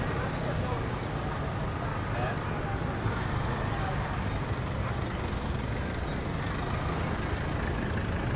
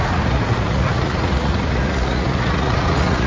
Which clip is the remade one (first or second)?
second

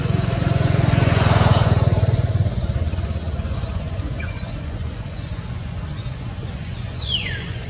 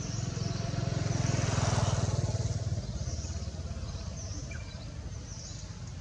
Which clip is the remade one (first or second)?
first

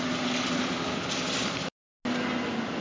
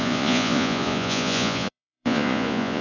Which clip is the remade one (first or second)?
second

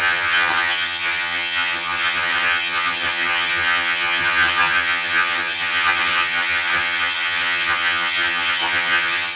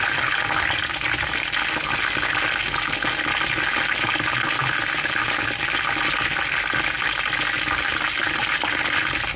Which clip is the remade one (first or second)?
first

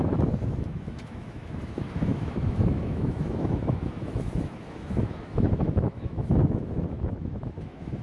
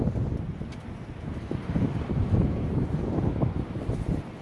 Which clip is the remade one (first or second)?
first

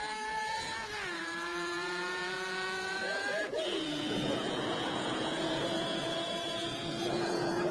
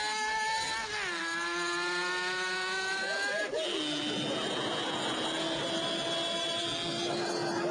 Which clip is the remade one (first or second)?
first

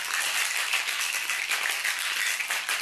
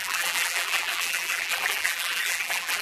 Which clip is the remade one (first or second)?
second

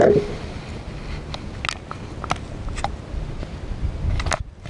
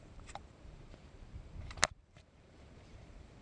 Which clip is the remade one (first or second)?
second